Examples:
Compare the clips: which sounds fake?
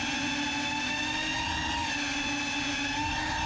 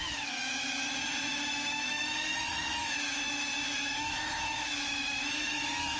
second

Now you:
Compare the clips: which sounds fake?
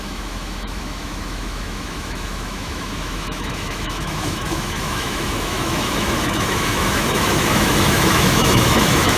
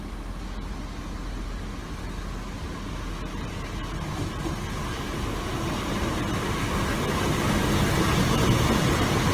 first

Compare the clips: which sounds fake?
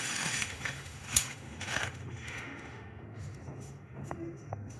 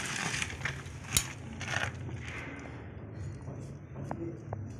first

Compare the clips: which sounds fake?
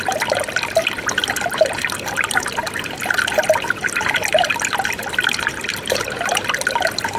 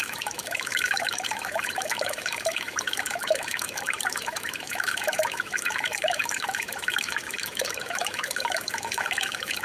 second